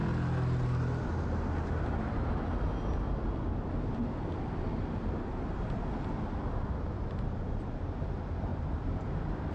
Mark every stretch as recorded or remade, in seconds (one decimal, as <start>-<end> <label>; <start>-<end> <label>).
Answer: 0.0-8.5 recorded; 8.5-9.1 remade; 9.1-9.5 recorded